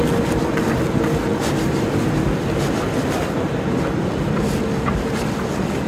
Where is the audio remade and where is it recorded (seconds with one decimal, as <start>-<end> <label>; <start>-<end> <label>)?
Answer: 0.0-5.9 recorded